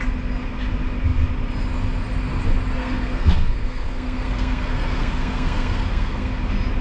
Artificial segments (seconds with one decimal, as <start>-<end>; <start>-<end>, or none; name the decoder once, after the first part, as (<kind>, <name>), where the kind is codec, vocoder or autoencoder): 2.8-6.3 (codec, SNAC)